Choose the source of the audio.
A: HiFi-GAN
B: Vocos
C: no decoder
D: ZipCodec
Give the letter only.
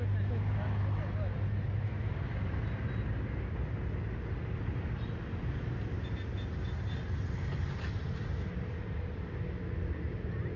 C